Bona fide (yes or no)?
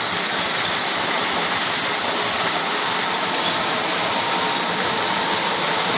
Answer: yes